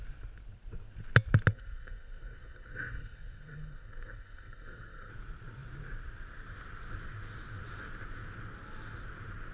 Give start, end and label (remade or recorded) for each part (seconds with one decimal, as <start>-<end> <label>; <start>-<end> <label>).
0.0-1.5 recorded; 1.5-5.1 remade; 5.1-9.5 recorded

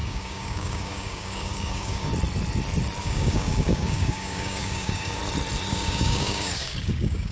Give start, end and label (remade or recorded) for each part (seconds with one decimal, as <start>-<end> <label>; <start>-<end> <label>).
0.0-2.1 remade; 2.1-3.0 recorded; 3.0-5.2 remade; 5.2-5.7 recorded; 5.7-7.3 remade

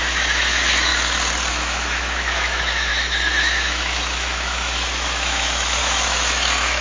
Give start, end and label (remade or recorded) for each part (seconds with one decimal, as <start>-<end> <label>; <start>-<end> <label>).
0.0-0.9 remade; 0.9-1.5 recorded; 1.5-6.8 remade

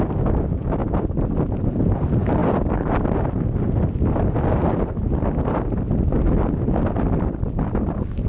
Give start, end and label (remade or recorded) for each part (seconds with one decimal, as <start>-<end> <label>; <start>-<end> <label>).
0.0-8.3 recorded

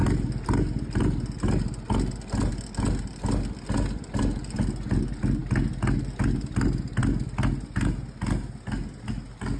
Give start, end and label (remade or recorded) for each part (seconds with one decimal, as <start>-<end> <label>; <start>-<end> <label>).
0.0-9.6 recorded

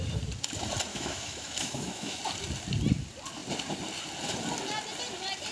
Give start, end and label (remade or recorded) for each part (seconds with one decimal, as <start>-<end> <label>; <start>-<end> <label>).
0.0-0.9 recorded; 0.9-2.2 remade; 2.2-5.5 recorded